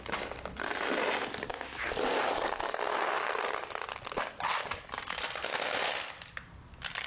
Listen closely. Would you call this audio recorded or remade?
recorded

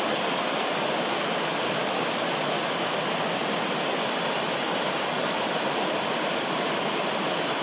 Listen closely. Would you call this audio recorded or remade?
recorded